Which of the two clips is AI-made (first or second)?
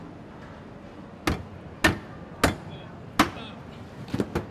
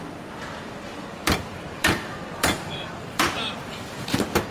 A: second